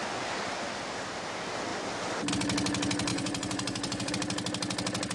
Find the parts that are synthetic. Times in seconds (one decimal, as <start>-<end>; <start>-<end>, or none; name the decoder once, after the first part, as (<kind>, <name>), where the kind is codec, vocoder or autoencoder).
3.1-4.1 (vocoder, Vocos)